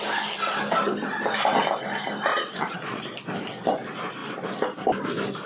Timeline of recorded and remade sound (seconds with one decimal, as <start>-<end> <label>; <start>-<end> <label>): 0.0-2.3 recorded; 2.3-3.0 remade; 3.0-5.5 recorded

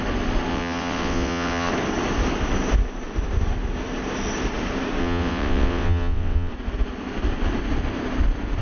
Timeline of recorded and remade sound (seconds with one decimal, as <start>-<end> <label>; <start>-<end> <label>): 0.0-0.5 recorded; 0.5-1.7 remade; 1.7-5.0 recorded; 5.0-6.5 remade; 6.5-8.6 recorded

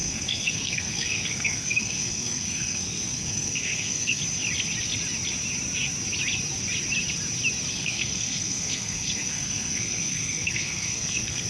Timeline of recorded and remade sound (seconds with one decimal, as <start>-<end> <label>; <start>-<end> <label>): 0.0-4.2 remade; 4.2-7.7 recorded; 7.7-11.5 remade

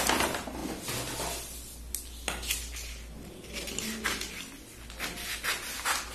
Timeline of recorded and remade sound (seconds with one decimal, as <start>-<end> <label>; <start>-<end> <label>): 0.0-6.1 recorded

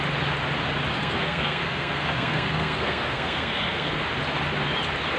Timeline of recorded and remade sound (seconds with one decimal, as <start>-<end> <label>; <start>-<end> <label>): 0.0-0.9 recorded; 0.9-4.0 remade; 4.0-5.2 recorded